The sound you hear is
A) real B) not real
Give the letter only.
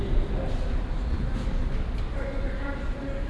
A